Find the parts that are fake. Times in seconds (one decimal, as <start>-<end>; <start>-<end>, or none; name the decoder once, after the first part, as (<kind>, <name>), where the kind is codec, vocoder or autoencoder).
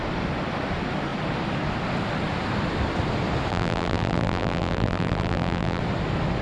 3.5-5.8 (vocoder, BigVGAN v2)